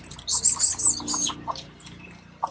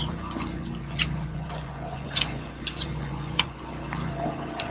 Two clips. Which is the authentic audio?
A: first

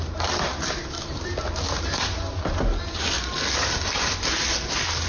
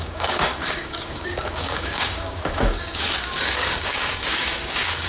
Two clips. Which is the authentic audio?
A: first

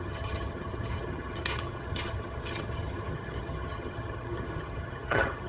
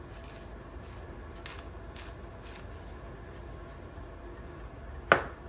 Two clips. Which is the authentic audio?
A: second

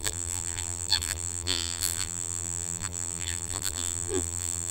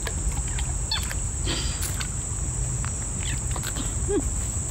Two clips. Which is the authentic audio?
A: second